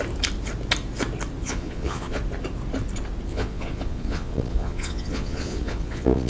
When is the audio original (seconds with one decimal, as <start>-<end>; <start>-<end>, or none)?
0.0-1.4; 2.2-3.3